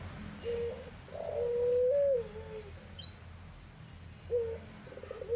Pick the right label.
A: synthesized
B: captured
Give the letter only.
B